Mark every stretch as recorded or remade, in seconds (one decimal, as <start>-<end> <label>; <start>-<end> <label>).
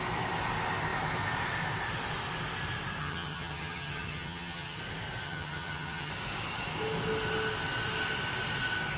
0.0-3.0 recorded; 3.0-4.8 remade; 4.8-5.2 recorded; 5.2-6.1 remade; 6.1-9.0 recorded